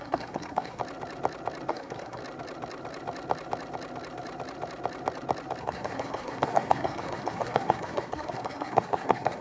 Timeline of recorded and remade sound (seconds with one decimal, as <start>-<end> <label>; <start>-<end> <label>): 0.0-0.8 remade; 0.8-1.7 recorded; 1.7-2.2 remade; 2.2-5.6 recorded; 5.6-9.4 remade